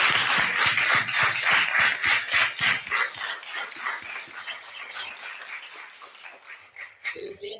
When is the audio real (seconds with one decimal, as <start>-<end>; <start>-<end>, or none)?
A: 0.0-4.4; 5.1-6.6